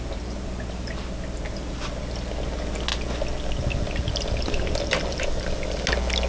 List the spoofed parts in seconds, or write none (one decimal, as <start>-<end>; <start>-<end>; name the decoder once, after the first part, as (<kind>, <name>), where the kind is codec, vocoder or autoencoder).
none